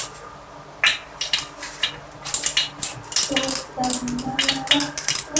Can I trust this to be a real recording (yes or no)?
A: yes